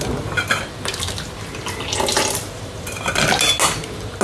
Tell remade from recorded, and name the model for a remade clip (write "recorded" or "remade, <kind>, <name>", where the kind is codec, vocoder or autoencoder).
recorded